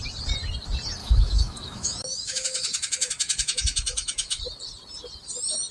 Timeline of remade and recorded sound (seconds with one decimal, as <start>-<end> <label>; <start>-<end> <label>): 0.0-1.0 recorded; 1.0-4.4 remade; 4.4-5.7 recorded